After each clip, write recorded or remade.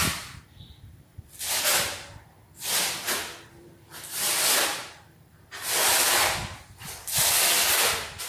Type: remade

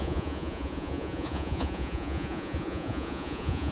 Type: remade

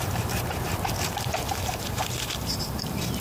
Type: remade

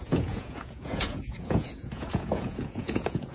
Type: remade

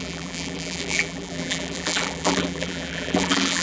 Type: remade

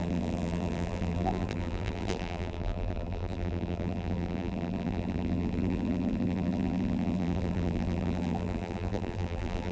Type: remade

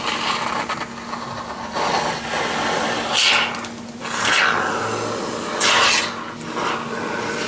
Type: recorded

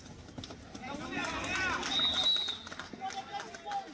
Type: recorded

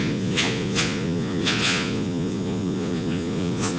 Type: remade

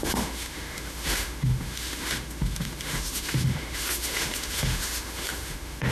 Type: remade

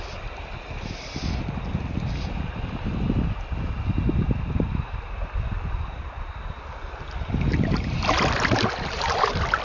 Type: recorded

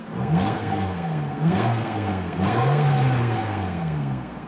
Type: remade